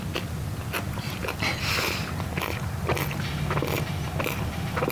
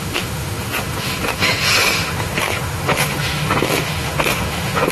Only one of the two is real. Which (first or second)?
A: first